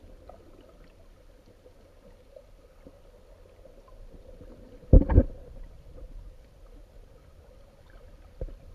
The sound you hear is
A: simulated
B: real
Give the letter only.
B